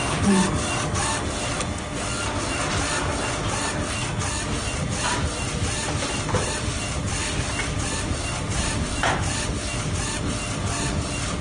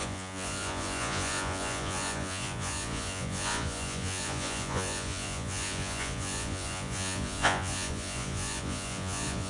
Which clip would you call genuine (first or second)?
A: first